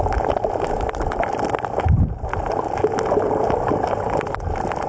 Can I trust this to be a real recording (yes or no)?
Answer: yes